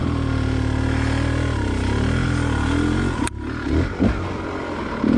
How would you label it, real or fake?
real